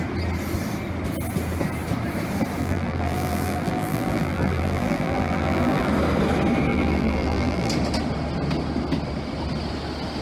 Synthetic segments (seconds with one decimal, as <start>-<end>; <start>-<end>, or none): 2.6-5.9; 6.7-7.7